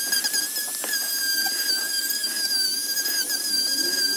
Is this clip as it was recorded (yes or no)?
yes